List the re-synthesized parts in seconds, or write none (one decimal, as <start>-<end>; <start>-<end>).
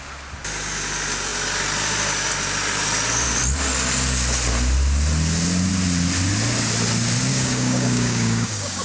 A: 7.3-8.8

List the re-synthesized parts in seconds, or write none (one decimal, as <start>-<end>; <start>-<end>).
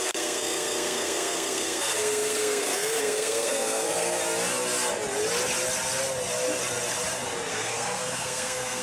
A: 0.0-4.2; 7.5-8.8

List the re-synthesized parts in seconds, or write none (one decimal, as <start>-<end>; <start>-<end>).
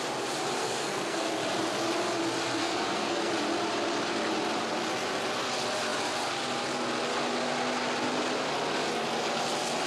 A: 0.6-1.3; 2.6-3.3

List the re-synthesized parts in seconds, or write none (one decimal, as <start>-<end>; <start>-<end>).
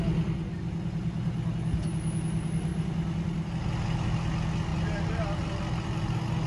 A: none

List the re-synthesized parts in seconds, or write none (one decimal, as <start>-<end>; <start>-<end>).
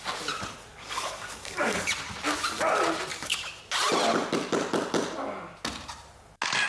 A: 0.7-1.9; 3.1-3.6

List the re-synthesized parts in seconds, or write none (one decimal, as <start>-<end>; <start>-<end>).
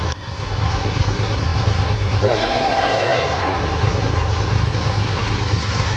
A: 0.0-6.0